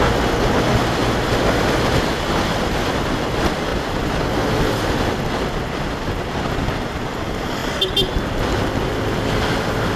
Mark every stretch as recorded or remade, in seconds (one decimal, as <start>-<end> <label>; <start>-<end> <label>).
0.0-10.0 recorded